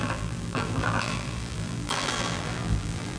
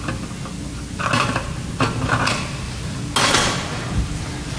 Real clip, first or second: second